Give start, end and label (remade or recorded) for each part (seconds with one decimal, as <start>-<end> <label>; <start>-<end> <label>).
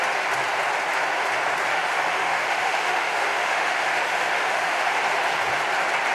0.0-1.7 recorded; 1.7-5.0 remade; 5.0-6.1 recorded